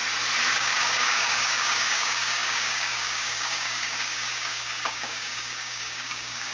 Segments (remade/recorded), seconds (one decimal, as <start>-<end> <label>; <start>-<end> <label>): 0.0-0.5 recorded; 0.5-6.5 remade